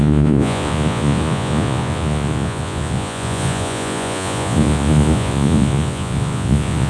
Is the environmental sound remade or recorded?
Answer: remade